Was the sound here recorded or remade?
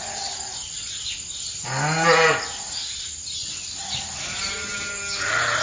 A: recorded